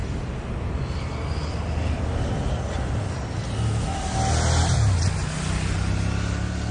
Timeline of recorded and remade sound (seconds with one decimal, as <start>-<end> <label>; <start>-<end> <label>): 0.0-6.7 recorded

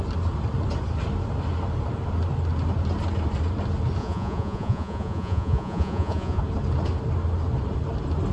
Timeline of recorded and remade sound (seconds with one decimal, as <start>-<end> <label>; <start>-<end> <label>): 0.0-4.0 recorded; 4.0-6.4 remade; 6.4-8.3 recorded

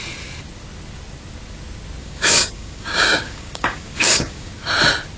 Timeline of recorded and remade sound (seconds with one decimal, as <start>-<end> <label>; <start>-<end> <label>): 0.0-2.0 recorded; 2.0-4.5 remade; 4.5-5.2 recorded

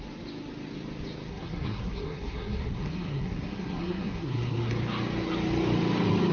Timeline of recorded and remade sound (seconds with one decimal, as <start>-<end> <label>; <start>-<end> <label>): 0.0-1.3 recorded; 1.3-4.7 remade; 4.7-6.3 recorded

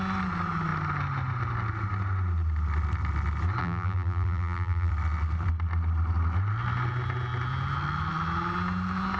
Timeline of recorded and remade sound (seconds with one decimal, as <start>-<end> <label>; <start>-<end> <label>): 0.0-3.6 recorded; 3.6-4.9 remade; 4.9-9.2 recorded